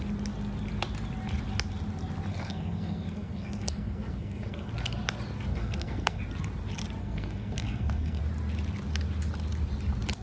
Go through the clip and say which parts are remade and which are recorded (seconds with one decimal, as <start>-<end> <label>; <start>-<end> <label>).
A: 0.0-2.3 recorded; 2.3-4.7 remade; 4.7-5.5 recorded; 5.5-6.2 remade; 6.2-7.0 recorded; 7.0-8.2 remade; 8.2-10.2 recorded